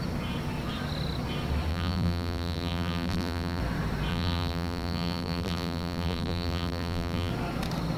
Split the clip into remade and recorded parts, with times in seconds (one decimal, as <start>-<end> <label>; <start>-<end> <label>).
0.0-1.7 recorded; 1.7-3.6 remade; 3.6-4.1 recorded; 4.1-7.3 remade; 7.3-8.0 recorded